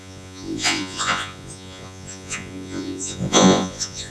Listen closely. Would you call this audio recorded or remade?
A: remade